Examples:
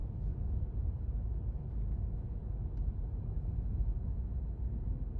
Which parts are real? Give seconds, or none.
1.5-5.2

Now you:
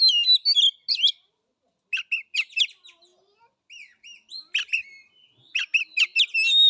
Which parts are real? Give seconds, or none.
0.0-6.7

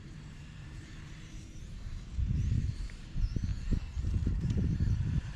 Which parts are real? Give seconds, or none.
3.5-4.2

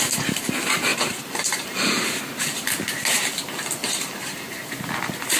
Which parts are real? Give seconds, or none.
0.0-0.9; 2.2-3.8; 4.7-5.4

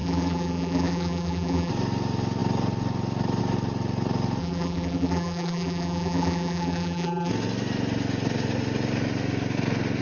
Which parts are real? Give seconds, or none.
1.7-4.4; 7.3-10.0

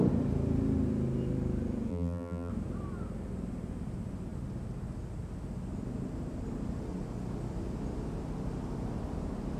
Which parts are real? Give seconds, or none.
0.0-1.9; 2.5-9.6

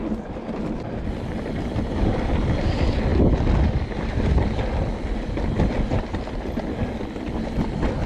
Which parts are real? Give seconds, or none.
0.0-8.1